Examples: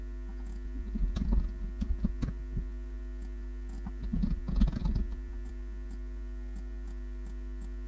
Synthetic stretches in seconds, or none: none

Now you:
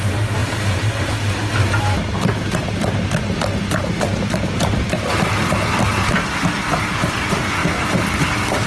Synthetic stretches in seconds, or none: 0.4-1.0 (vocoder, BigVGAN v2); 2.6-6.7; 7.6-8.1

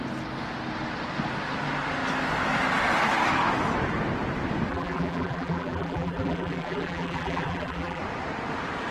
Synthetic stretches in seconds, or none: 4.7-8.0 (vocoder, BigVGAN v2)

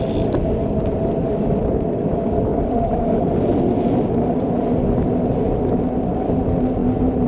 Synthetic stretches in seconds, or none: 2.5-5.2 (vocoder, BigVGAN v2); 6.8-7.3

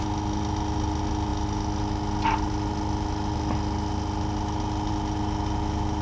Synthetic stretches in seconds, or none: none

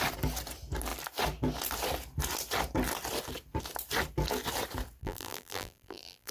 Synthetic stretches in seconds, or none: 5.0-6.3 (vocoder, BigVGAN v2)

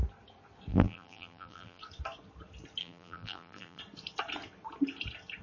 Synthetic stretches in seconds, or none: 0.7-1.8 (vocoder, BigVGAN v2); 2.8-3.8

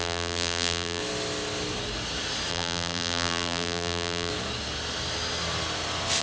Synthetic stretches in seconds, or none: 0.0-1.0 (vocoder, BigVGAN v2); 2.5-4.3